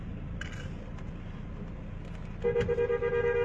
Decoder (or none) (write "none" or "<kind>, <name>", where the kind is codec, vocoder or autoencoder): none